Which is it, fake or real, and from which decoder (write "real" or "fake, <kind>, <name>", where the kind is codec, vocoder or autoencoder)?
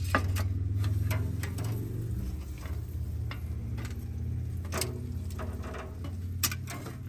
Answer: real